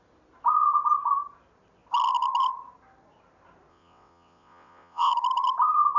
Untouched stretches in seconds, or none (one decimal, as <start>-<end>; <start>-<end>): 0.0-3.7; 5.1-6.0